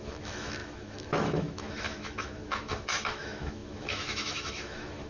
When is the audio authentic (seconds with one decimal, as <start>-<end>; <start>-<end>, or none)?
none